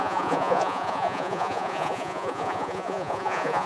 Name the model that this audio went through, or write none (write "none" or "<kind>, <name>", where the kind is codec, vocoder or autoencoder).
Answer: vocoder, Vocos